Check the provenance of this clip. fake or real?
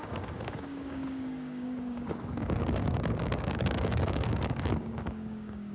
fake